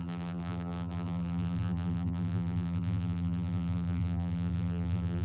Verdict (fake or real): fake